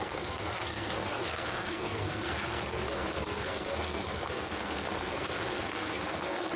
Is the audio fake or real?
fake